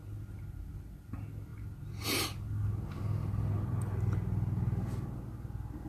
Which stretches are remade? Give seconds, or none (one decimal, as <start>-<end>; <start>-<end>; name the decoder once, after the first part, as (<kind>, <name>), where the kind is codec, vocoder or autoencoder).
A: none